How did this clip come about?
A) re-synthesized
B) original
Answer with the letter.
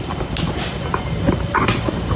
B